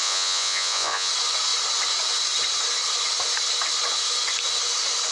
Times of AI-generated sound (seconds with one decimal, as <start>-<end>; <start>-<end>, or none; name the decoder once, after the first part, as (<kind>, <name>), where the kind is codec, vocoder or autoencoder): 0.0-1.1 (vocoder, Vocos)